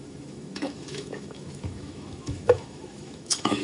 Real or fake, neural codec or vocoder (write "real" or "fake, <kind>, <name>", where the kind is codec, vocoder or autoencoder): fake, autoencoder, DAC-VAE